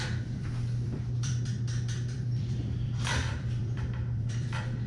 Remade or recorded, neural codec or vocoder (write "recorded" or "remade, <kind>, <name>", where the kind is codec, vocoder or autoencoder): remade, vocoder, BigVGAN v2